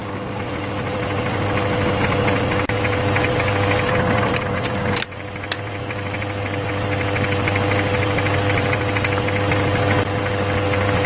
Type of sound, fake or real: real